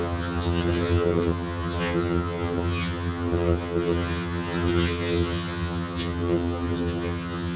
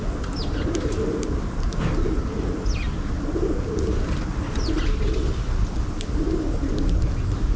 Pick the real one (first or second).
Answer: second